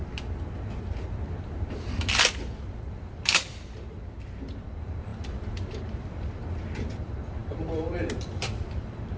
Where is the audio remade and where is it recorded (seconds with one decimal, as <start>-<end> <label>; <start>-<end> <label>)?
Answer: 0.0-2.9 recorded; 2.9-9.2 remade